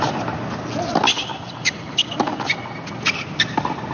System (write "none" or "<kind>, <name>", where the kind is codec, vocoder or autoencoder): none